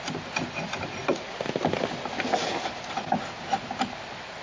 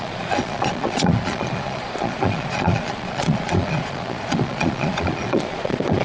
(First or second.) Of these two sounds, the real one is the first